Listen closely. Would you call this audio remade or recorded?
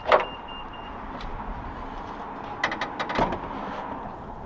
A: recorded